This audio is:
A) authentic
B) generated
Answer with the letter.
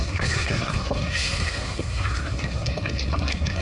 B